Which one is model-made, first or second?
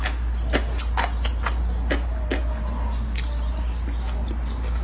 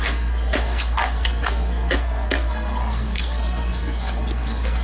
second